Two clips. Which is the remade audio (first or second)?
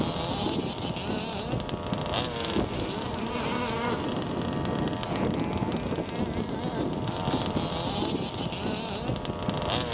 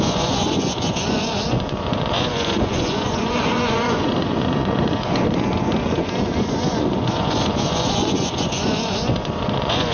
second